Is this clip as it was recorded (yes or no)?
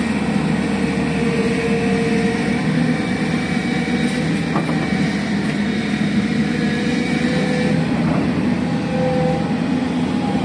yes